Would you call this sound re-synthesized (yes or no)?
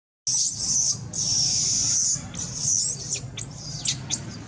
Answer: no